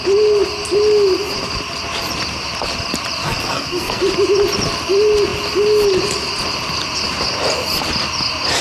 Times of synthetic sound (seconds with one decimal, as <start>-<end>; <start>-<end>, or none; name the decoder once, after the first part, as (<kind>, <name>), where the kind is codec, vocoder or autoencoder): 3.2-4.0 (codec, SNAC)